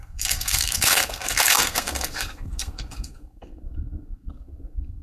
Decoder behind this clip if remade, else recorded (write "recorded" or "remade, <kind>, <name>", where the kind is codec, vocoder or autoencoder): remade, codec, SNAC